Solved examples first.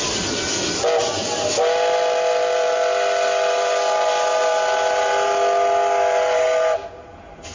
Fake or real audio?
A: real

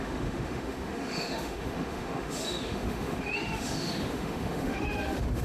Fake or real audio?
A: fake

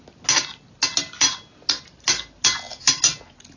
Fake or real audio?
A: real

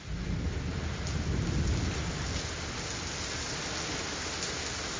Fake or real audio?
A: real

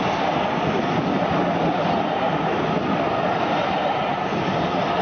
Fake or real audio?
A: real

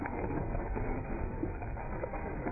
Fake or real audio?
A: fake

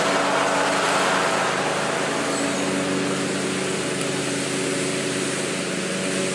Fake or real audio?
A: real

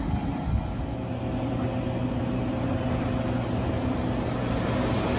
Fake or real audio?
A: real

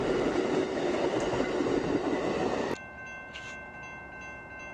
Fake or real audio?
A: real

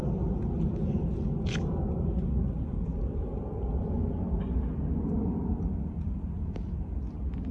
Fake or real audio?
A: real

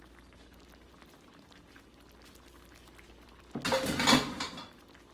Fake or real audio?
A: real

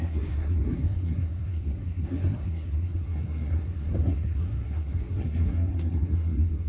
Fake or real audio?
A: fake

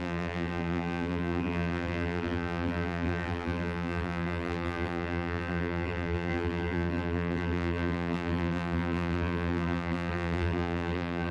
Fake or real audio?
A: fake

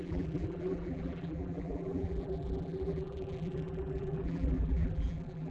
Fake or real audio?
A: fake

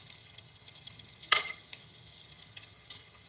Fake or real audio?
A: fake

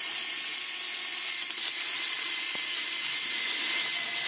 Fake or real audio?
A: real